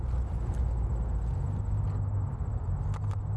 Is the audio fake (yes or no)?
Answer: no